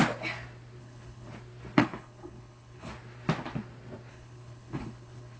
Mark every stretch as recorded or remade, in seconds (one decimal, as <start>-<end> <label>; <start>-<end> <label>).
0.0-0.8 recorded; 0.8-1.3 remade; 1.3-1.8 recorded; 1.8-2.9 remade; 2.9-4.1 recorded; 4.1-5.4 remade